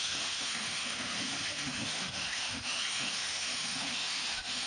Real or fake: fake